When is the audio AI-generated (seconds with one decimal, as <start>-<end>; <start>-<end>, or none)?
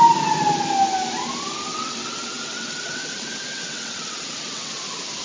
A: 1.7-4.8